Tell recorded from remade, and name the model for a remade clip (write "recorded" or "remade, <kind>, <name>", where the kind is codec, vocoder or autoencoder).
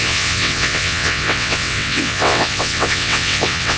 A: remade, vocoder, WaveNeXt